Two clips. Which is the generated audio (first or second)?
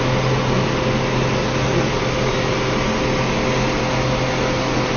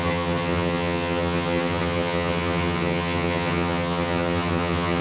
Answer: second